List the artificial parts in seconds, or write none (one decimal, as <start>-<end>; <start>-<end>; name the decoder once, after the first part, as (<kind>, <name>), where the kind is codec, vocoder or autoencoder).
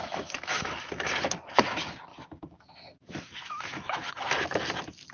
0.0-1.1 (autoencoder, DAC-VAE); 2.1-4.1